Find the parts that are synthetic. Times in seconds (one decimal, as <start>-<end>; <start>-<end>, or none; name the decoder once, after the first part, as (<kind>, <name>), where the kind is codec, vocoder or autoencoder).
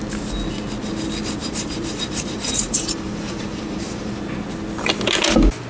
1.4-4.2 (vocoder, BigVGAN v2)